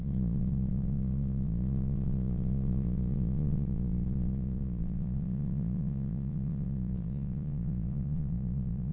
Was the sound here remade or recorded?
remade